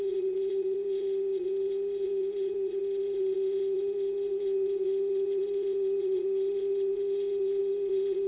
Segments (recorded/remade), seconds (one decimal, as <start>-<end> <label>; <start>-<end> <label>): 0.0-8.3 remade